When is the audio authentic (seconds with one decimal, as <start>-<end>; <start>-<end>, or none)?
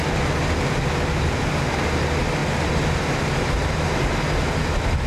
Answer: 0.0-5.1